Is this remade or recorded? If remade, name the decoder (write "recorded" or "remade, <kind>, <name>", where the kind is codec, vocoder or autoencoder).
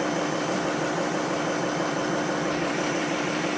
remade, vocoder, BigVGAN v2